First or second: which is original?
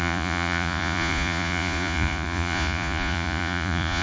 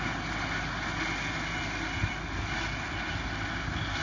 second